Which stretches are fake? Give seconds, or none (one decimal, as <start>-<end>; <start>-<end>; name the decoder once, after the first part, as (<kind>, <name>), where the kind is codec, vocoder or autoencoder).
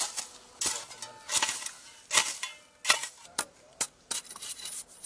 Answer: 3.2-5.1 (vocoder, BigVGAN v2)